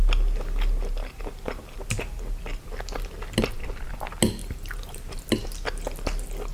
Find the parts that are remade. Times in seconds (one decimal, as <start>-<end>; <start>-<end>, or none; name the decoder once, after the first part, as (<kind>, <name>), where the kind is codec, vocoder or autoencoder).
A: none